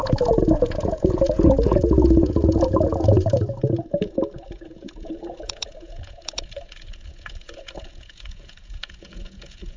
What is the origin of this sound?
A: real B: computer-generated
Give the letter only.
B